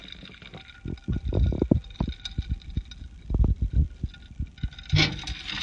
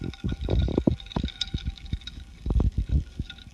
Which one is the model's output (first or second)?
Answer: second